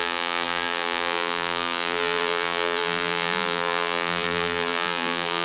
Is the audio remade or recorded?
remade